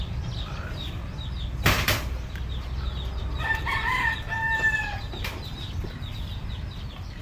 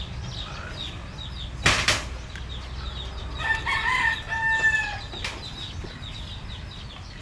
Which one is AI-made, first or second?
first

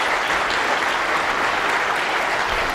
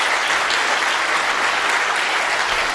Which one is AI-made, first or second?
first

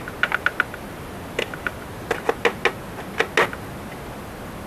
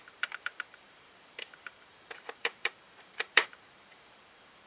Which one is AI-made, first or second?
second